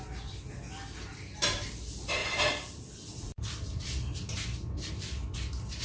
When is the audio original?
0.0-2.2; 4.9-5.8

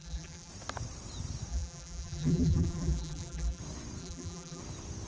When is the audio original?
0.5-1.5; 3.6-4.0; 4.6-5.1